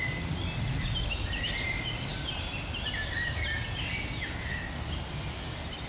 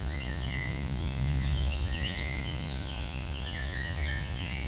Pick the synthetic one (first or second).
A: second